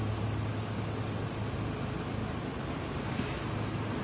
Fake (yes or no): no